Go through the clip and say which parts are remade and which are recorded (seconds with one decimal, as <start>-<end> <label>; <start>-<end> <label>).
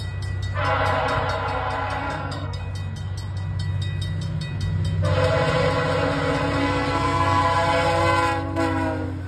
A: 0.0-2.0 recorded; 2.0-2.6 remade; 2.6-6.6 recorded; 6.6-7.4 remade; 7.4-9.3 recorded